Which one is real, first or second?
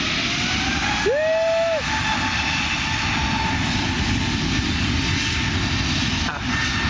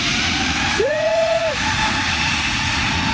first